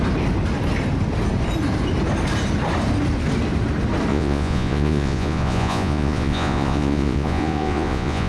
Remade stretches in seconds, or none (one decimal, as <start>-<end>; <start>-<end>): 4.1-8.3